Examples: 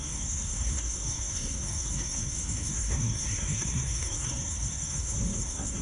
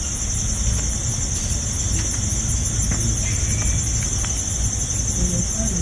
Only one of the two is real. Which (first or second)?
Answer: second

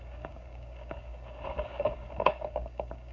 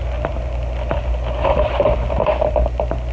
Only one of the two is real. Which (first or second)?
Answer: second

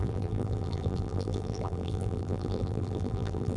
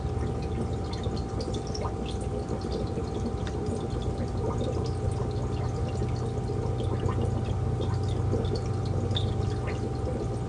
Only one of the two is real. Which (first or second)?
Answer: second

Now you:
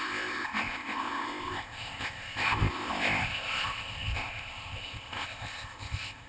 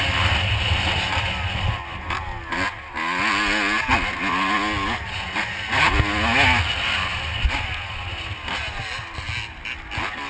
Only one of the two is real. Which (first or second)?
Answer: second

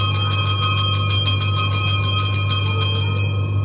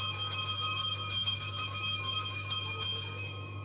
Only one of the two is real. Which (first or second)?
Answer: first